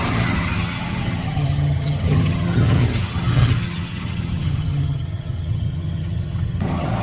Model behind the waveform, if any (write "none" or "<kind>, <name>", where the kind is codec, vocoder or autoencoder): vocoder, HiFi-GAN